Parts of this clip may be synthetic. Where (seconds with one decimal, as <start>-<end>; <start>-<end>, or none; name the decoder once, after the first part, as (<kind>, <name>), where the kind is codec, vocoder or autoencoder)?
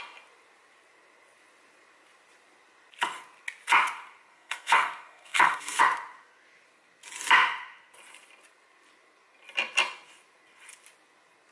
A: 4.3-5.8 (codec, SNAC)